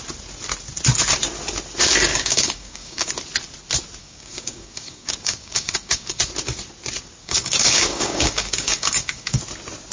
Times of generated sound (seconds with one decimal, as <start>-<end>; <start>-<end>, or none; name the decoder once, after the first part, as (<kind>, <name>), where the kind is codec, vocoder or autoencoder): 2.1-3.1 (codec, DAC); 4.0-6.2; 7.2-9.4